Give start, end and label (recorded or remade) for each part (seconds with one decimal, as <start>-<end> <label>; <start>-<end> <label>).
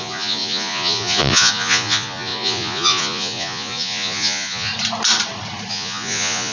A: 0.0-4.7 remade; 4.7-5.7 recorded; 5.7-6.5 remade